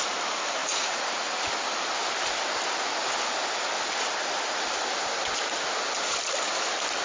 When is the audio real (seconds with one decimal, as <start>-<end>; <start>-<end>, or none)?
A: 0.0-0.6; 1.5-7.0